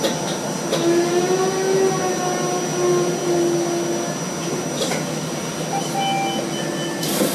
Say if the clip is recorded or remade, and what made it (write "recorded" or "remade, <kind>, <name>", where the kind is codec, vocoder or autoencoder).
recorded